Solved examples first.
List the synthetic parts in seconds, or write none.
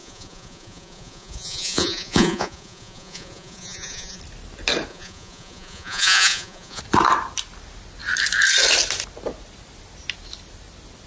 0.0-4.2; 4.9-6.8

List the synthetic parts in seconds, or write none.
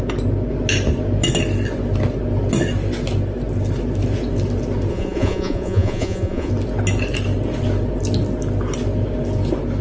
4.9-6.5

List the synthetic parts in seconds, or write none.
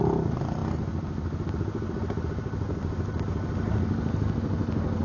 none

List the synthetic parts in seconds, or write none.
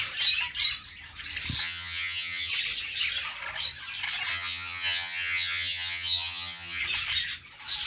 1.6-2.5; 4.3-6.8